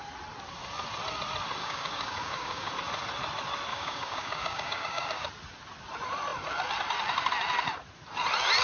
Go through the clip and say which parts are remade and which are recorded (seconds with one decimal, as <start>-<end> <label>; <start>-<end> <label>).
0.0-1.6 recorded; 1.6-2.7 remade; 2.7-3.7 recorded; 3.7-5.3 remade; 5.3-8.6 recorded